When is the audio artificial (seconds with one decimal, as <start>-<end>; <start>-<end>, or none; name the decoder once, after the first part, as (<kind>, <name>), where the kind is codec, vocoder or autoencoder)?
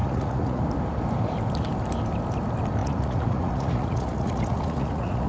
0.0-0.6 (vocoder, Vocos); 2.8-5.3